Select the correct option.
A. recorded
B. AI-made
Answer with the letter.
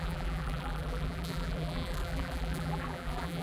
B